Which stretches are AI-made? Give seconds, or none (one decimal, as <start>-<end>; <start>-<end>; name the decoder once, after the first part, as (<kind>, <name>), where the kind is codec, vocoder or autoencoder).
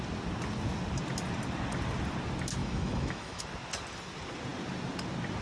2.6-3.4 (autoencoder, DAC-VAE)